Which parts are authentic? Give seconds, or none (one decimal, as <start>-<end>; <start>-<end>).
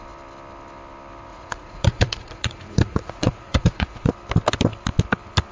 0.0-1.3; 4.1-5.5